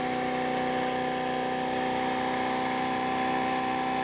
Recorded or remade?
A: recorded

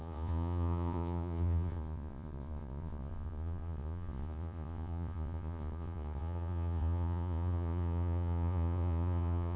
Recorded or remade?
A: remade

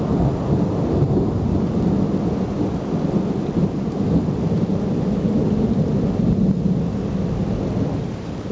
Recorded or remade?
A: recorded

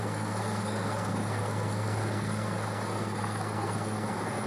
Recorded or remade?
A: remade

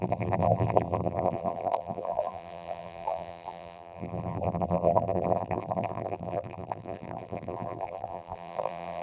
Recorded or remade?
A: remade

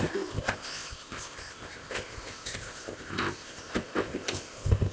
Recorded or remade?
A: remade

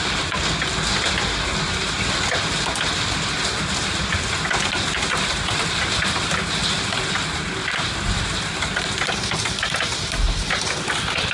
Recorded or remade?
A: recorded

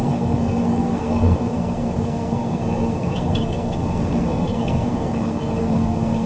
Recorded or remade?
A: remade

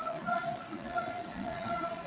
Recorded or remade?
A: remade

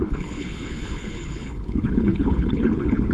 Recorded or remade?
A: remade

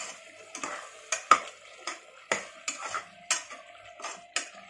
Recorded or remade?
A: recorded